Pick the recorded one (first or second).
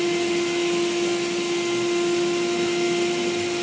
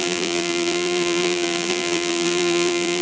first